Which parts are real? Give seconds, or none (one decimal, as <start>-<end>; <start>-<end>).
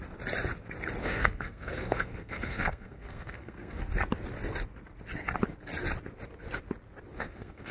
0.0-1.0; 3.8-7.1